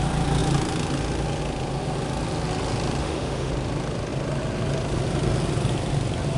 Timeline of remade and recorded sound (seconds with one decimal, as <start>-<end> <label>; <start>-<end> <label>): 0.0-3.0 recorded; 3.0-3.5 remade; 3.5-6.4 recorded